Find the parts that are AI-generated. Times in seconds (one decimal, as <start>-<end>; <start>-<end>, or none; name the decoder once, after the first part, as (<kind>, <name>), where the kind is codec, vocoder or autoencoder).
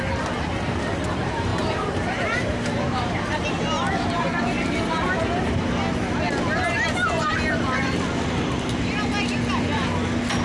1.5-5.2 (vocoder, BigVGAN v2)